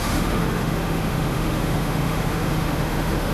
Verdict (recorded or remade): remade